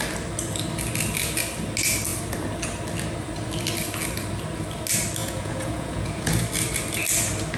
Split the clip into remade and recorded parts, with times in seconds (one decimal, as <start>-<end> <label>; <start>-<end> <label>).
0.0-5.2 recorded; 5.2-6.3 remade; 6.3-7.6 recorded